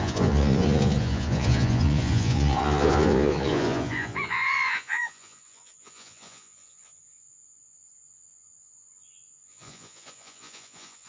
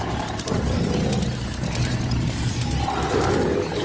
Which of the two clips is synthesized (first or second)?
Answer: first